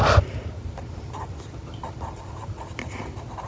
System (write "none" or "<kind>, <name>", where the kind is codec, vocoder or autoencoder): none